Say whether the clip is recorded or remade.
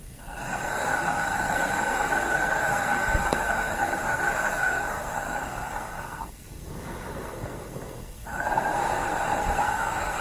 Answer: remade